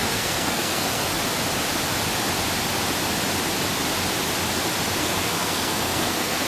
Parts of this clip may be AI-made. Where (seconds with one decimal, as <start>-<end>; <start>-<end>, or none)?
0.0-1.1; 5.0-6.5